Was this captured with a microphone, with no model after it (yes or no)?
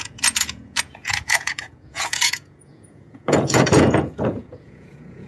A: no